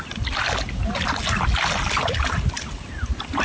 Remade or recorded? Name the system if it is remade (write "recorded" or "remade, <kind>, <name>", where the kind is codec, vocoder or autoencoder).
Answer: recorded